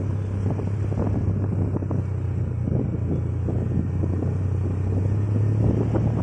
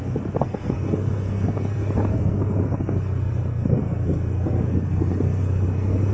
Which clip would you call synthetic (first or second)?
second